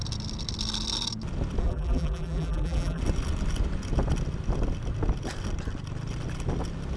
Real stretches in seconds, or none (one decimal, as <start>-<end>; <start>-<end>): 0.0-1.6; 3.0-7.0